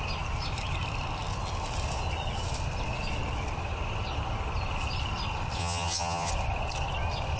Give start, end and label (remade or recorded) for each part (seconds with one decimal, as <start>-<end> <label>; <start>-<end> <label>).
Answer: 0.0-5.6 recorded; 5.6-6.3 remade; 6.3-7.4 recorded